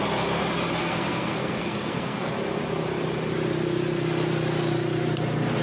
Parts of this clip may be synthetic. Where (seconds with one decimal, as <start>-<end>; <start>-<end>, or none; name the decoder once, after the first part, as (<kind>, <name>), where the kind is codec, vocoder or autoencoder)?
0.8-2.3 (codec, SNAC)